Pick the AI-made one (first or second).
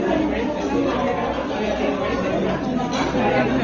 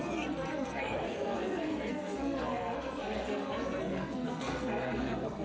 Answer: second